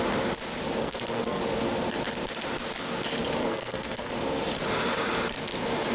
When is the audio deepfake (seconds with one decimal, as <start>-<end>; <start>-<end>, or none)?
0.8-1.4; 3.4-4.1